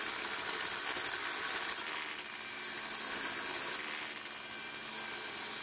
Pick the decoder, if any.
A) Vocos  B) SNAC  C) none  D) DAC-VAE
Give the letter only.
C